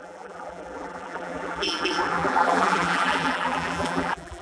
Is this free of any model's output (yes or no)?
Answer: no